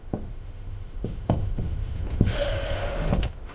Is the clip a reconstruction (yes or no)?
yes